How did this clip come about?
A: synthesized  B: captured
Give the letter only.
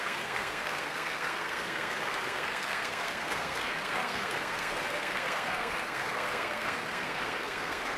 A